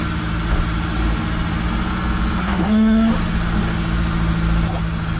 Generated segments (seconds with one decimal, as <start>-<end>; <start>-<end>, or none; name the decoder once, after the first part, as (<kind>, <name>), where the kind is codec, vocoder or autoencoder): 2.4-3.1 (codec, SNAC)